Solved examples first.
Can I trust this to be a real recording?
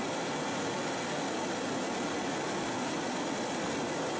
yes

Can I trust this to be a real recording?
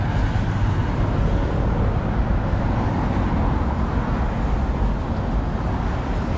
yes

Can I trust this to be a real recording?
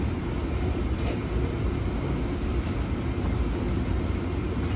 yes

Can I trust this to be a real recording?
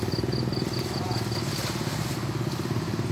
yes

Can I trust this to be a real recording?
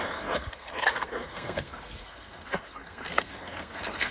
no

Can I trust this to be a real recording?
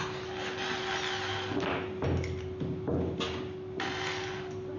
yes